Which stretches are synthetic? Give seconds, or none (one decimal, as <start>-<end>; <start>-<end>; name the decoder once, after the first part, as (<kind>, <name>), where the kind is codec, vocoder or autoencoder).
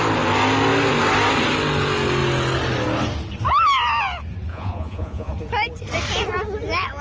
4.5-5.3 (vocoder, Vocos)